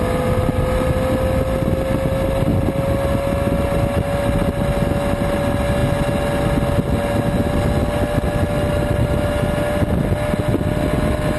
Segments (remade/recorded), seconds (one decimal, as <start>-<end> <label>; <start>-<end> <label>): 0.0-11.4 recorded